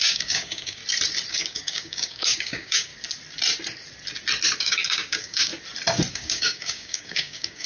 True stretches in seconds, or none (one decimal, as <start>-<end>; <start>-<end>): 0.8-1.3; 2.9-4.6; 5.5-6.1